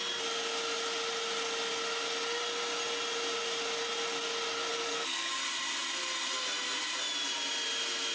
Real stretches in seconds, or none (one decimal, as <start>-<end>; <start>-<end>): 0.0-4.7; 5.3-8.1